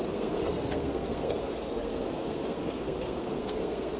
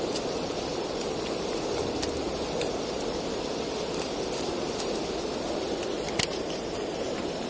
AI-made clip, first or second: first